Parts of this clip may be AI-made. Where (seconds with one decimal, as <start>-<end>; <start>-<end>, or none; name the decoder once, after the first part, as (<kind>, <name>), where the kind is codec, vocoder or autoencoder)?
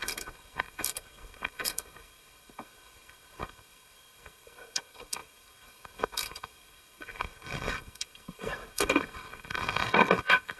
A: 0.0-10.6 (codec, SNAC)